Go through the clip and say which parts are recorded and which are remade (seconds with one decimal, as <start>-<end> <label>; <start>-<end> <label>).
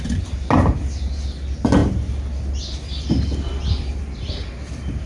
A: 0.0-5.1 recorded